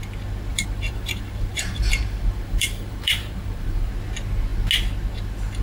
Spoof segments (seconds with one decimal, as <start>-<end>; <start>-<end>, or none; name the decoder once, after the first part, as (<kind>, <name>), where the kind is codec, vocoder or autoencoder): 0.5-3.9 (vocoder, BigVGAN v2)

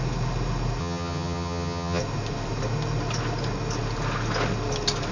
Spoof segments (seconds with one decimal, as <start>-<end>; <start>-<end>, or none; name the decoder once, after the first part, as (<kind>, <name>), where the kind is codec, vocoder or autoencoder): 0.8-2.0 (vocoder, HiFi-GAN)

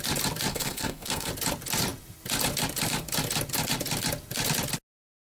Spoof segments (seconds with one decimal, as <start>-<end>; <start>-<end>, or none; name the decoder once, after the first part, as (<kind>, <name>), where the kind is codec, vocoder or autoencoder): 0.5-1.3 (codec, SNAC)

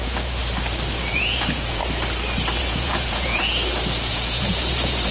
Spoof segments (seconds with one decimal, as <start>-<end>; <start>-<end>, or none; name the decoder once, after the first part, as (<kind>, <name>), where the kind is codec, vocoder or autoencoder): 0.0-0.4 (vocoder, Vocos); 1.0-1.8; 2.6-3.5; 4.1-5.1

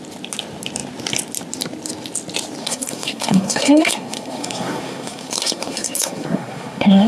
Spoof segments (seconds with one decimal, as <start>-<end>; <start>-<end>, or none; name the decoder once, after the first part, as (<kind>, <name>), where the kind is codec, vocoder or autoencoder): 2.6-7.1 (codec, SNAC)